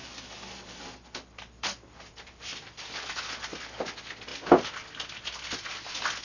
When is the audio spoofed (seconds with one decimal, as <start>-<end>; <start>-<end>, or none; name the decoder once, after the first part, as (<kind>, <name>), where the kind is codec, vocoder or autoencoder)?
0.0-2.8 (vocoder, BigVGAN v2)